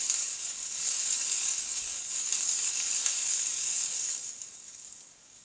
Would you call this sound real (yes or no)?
no